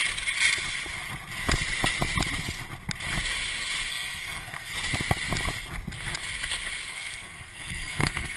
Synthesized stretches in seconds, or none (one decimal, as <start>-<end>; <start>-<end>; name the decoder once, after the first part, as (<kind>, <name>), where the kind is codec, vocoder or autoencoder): 3.9-4.7 (codec, SNAC); 6.9-8.4